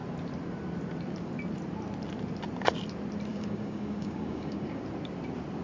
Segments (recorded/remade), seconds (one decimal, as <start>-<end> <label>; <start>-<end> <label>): 0.0-3.3 recorded; 3.3-4.8 remade; 4.8-5.6 recorded